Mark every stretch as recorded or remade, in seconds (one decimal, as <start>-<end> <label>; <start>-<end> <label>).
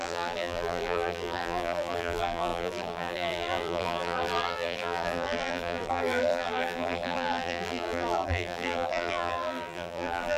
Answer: 0.0-10.4 remade